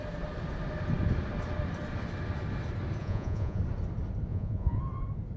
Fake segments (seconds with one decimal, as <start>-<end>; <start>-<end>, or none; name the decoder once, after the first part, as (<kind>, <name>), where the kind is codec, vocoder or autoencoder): 3.0-3.6 (vocoder, Vocos); 4.3-4.8